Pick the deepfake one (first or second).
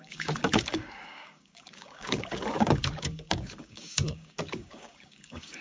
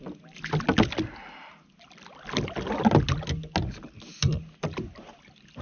first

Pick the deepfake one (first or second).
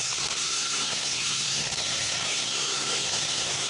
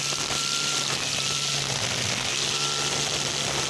first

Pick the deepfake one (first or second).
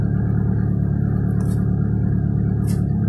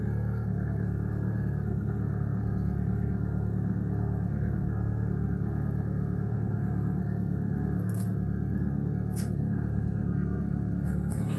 second